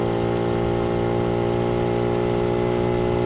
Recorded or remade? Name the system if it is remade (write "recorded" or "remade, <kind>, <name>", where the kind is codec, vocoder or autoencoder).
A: recorded